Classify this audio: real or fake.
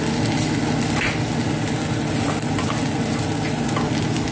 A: real